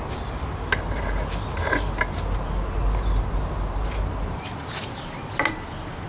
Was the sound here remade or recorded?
recorded